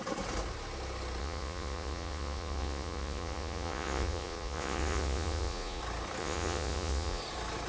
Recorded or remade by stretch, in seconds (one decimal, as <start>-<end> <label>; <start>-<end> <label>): 0.0-1.2 recorded; 1.2-5.8 remade; 5.8-6.2 recorded; 6.2-7.2 remade; 7.2-7.7 recorded